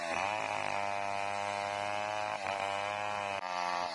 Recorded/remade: recorded